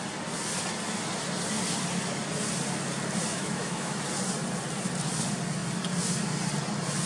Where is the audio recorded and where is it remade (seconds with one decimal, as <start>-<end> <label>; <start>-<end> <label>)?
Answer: 0.0-3.3 recorded; 3.3-4.0 remade; 4.0-7.1 recorded

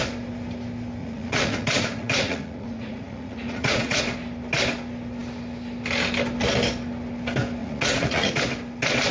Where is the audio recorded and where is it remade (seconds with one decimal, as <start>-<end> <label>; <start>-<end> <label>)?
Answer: 0.0-1.0 recorded; 1.0-4.0 remade; 4.0-7.6 recorded; 7.6-8.4 remade; 8.4-9.1 recorded

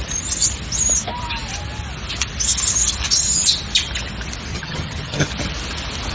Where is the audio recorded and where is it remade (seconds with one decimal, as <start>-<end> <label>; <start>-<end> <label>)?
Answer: 0.0-4.5 recorded; 4.5-5.3 remade; 5.3-6.1 recorded